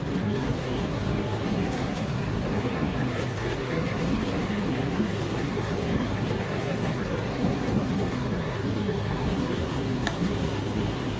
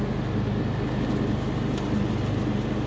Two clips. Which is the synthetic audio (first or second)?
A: first